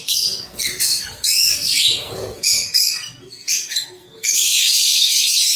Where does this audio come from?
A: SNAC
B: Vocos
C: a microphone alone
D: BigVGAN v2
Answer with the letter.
A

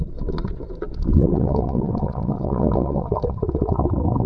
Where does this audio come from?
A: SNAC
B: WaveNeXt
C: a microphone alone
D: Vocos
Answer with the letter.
B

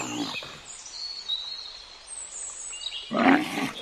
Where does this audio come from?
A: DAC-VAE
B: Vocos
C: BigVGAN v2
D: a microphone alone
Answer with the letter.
D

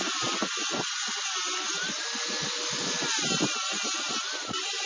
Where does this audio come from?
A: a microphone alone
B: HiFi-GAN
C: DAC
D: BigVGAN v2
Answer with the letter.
A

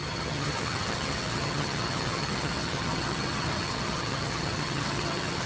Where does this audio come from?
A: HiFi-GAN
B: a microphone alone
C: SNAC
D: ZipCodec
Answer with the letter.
A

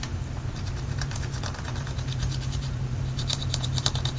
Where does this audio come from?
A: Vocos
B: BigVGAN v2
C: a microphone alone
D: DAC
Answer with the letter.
B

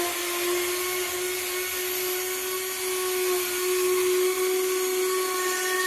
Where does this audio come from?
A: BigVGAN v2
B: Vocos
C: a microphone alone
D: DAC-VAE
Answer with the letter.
C